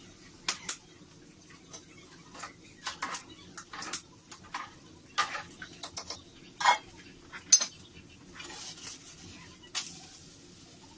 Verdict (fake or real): real